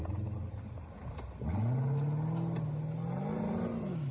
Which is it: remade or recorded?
recorded